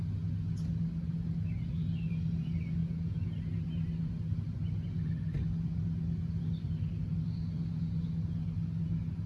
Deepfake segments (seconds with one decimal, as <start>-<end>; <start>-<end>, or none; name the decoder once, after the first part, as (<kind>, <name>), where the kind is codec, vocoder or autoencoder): none